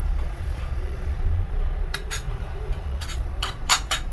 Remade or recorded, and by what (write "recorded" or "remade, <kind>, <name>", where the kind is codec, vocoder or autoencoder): remade, vocoder, Vocos